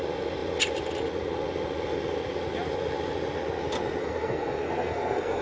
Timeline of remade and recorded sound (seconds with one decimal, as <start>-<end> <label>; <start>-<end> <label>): 0.0-4.0 recorded; 4.0-5.4 remade